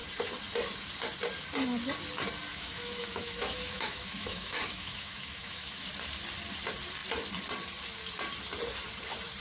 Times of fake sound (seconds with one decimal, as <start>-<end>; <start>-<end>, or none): 2.5-5.9